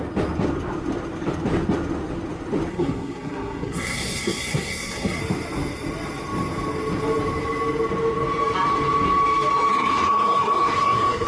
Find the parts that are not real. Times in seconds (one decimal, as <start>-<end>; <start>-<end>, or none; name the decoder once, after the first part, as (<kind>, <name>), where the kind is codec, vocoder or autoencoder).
2.7-5.2 (codec, SNAC); 9.7-11.3